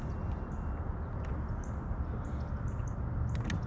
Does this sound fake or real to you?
real